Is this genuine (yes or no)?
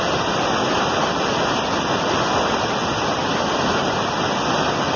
yes